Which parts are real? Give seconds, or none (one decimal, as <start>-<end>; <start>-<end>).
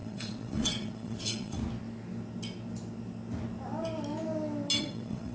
1.6-4.8